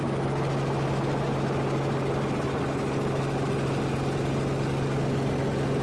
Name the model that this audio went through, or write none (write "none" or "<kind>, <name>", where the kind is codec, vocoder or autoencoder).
none